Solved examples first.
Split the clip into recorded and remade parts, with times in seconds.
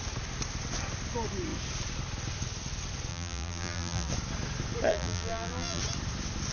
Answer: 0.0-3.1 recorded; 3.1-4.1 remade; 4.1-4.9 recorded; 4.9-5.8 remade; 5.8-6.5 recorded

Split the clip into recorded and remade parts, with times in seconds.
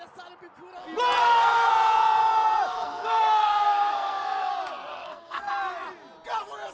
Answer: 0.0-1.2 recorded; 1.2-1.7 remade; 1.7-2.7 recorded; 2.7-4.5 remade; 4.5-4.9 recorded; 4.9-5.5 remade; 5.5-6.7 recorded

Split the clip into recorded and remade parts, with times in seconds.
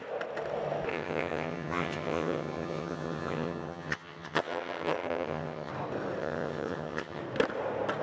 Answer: 0.0-0.9 recorded; 0.9-5.7 remade; 5.7-6.2 recorded; 6.2-7.2 remade; 7.2-8.0 recorded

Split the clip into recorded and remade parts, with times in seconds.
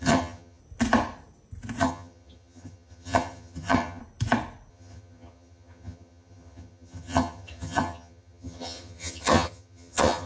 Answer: 0.0-0.6 remade; 0.6-1.8 recorded; 1.8-4.0 remade; 4.0-4.7 recorded; 4.7-10.3 remade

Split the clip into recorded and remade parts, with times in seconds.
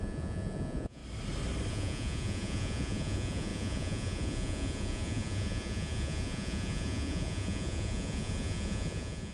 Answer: 0.0-1.0 remade; 1.0-1.7 recorded; 1.7-9.3 remade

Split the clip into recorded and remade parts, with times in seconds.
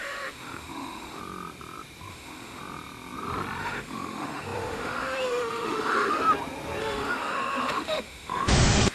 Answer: 0.0-1.2 remade; 1.2-2.1 recorded; 2.1-2.6 remade; 2.6-3.6 recorded; 3.6-6.2 remade; 6.2-6.8 recorded; 6.8-8.9 remade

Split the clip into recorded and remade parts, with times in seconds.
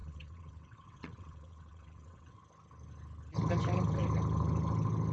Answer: 0.0-2.4 remade; 2.4-5.1 recorded